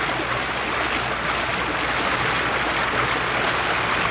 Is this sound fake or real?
real